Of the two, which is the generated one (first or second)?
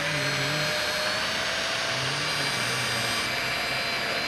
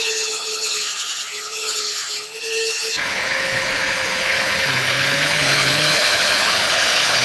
second